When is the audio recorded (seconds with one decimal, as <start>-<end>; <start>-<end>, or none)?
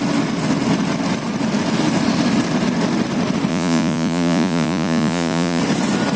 0.0-3.5; 5.6-6.2